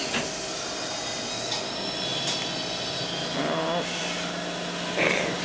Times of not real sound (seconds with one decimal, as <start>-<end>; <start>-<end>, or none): none